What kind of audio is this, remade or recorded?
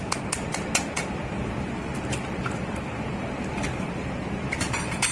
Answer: recorded